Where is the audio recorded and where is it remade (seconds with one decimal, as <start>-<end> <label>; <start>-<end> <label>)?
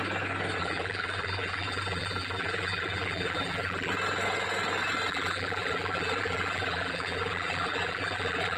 0.0-0.6 recorded; 0.6-3.9 remade; 3.9-5.1 recorded; 5.1-8.6 remade